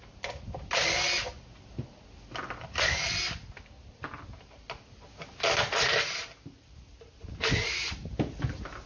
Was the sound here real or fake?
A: real